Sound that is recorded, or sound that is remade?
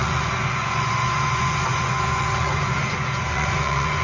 remade